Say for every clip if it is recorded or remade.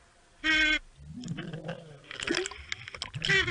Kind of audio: recorded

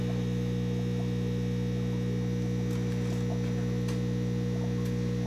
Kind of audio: recorded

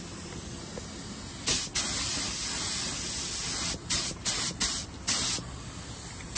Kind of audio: recorded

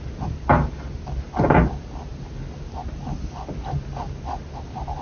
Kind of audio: recorded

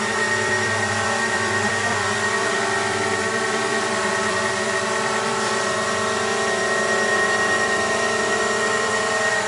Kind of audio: remade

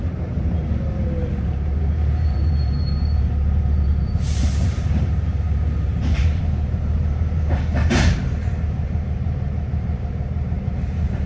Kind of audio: remade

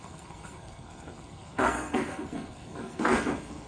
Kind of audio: remade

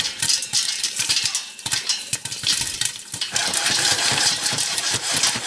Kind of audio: remade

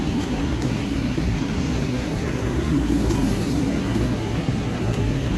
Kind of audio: remade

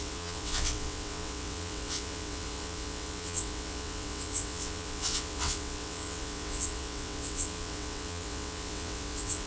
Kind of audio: remade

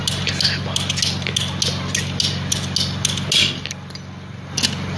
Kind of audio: recorded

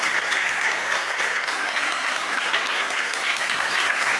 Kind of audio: remade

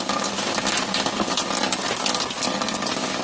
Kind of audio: recorded